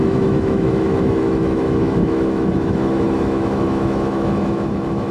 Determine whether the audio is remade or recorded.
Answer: remade